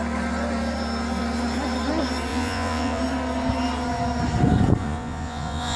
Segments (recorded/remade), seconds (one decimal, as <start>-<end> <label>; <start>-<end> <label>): 0.0-2.3 recorded; 2.3-3.0 remade; 3.0-4.8 recorded; 4.8-5.8 remade